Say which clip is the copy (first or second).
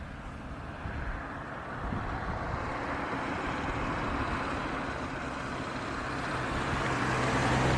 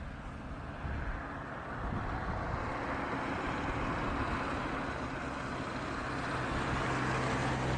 first